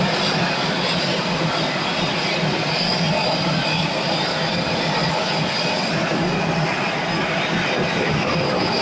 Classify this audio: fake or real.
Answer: real